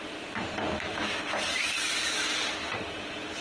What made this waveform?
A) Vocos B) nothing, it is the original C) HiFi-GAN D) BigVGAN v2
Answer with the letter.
D